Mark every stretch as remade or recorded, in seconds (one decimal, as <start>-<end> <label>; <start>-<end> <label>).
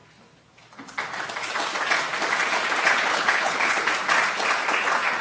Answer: 0.0-3.1 recorded; 3.1-3.9 remade; 3.9-5.2 recorded